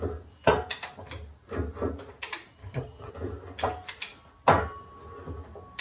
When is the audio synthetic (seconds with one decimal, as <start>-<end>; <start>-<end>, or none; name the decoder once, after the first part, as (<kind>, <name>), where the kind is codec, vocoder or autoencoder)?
2.6-3.1 (vocoder, HiFi-GAN)